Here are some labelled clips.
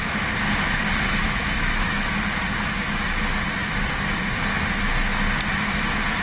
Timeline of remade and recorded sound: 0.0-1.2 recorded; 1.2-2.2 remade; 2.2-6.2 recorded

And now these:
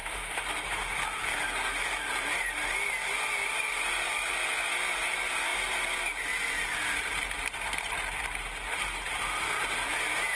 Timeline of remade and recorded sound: 0.0-2.1 remade; 2.1-10.3 recorded

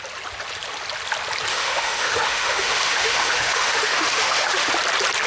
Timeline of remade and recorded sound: 0.0-1.5 recorded; 1.5-4.7 remade; 4.7-5.3 recorded

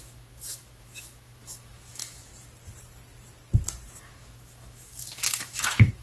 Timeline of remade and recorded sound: 0.0-2.3 remade; 2.3-4.0 recorded; 4.0-6.0 remade